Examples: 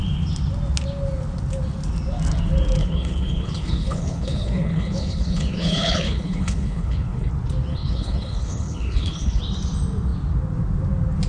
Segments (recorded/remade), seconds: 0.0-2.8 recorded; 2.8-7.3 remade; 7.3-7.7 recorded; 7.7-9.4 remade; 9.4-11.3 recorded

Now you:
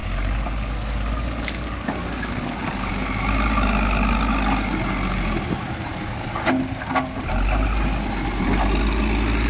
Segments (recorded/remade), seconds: 0.0-2.9 remade; 2.9-5.9 recorded; 5.9-6.5 remade; 6.5-9.5 recorded

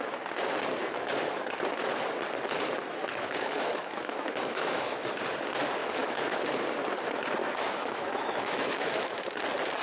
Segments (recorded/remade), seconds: 0.0-3.0 recorded; 3.0-5.2 remade; 5.2-5.8 recorded; 5.8-6.4 remade; 6.4-7.4 recorded; 7.4-9.2 remade; 9.2-9.8 recorded

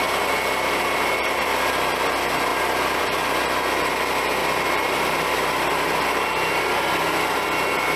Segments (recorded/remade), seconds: 0.0-2.5 recorded; 2.5-3.0 remade; 3.0-4.4 recorded; 4.4-5.3 remade; 5.3-8.0 recorded

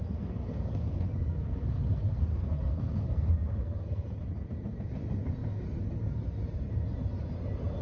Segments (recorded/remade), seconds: 0.0-4.1 remade; 4.1-7.8 recorded

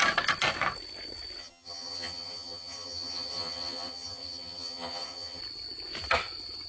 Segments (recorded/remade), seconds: 0.0-1.4 recorded; 1.4-5.4 remade; 5.4-6.7 recorded

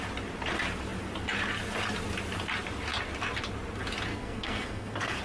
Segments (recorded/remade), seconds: 0.0-4.1 recorded; 4.1-5.2 remade

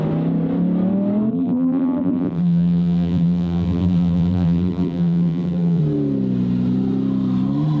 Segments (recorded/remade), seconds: 0.0-1.3 recorded; 1.3-5.8 remade; 5.8-7.8 recorded